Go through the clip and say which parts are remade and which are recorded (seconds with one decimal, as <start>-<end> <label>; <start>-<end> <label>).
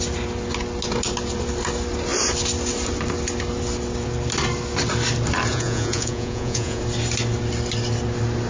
0.0-5.5 recorded; 5.5-6.8 remade; 6.8-8.5 recorded